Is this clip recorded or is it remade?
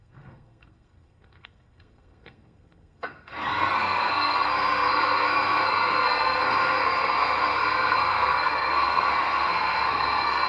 remade